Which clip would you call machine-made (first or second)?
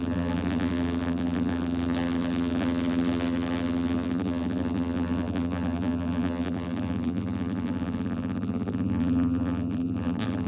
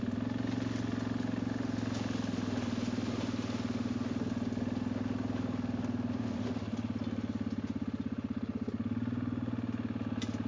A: first